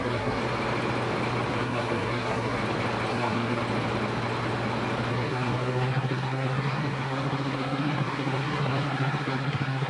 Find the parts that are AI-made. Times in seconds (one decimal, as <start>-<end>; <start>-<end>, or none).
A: 0.0-0.4; 1.5-2.6; 3.1-3.6; 5.1-9.9

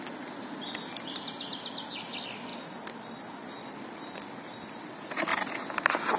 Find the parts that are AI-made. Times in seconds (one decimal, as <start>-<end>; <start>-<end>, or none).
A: none

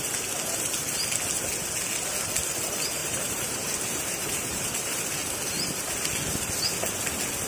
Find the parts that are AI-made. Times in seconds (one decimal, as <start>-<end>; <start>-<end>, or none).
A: 3.0-5.1

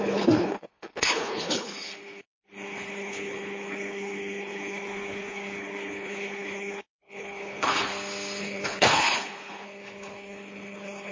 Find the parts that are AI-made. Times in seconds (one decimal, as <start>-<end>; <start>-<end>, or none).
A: 0.0-7.9; 8.4-11.1

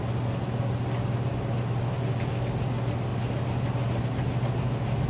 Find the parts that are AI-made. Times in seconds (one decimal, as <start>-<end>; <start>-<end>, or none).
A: none

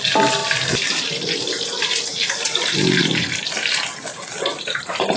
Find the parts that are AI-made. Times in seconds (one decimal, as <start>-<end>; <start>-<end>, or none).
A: 0.4-3.5; 4.5-5.2

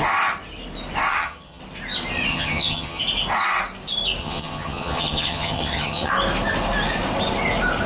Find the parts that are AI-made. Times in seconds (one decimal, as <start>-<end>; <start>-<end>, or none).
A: 1.1-1.6; 2.3-3.0; 4.2-6.1

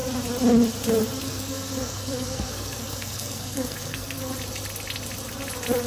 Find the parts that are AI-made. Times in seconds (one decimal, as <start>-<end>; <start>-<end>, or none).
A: 1.2-4.3